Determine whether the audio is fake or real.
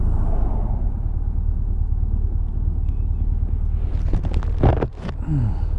real